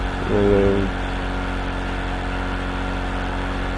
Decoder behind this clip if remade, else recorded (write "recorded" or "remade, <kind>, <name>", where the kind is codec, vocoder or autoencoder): recorded